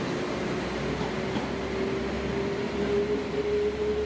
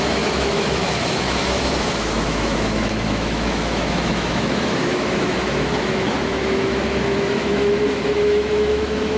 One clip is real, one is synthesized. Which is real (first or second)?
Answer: first